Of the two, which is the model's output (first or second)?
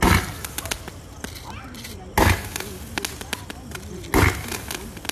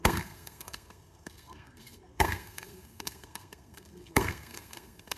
second